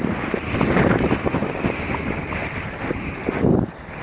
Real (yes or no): no